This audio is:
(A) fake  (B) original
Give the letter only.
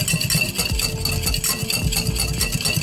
B